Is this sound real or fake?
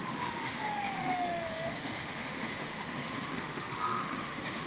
fake